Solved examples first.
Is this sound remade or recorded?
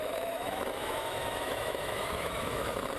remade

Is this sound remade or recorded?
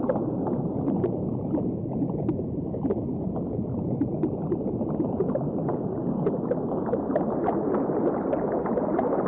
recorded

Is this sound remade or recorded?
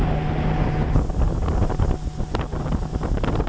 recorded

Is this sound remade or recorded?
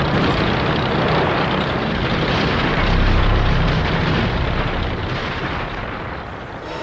remade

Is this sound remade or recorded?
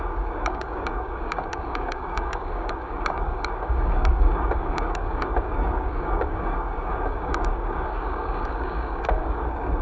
remade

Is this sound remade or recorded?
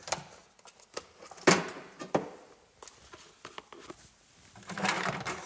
recorded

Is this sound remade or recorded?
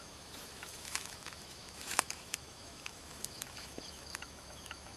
remade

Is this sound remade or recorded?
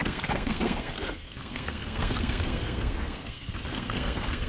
remade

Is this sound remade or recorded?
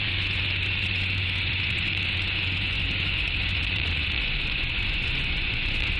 remade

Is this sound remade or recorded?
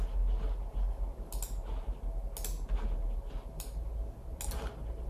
recorded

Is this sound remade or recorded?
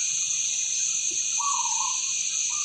recorded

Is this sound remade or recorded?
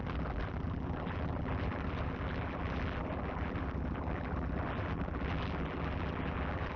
remade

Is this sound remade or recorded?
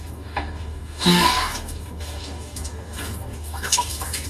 remade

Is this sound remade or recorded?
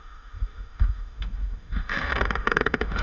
remade